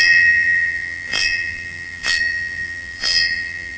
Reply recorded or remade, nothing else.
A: remade